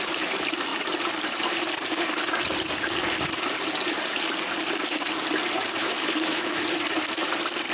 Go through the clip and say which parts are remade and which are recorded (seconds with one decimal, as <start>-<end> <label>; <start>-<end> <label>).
0.0-5.8 recorded; 5.8-6.6 remade; 6.6-7.7 recorded